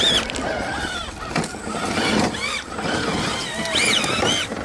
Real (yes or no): yes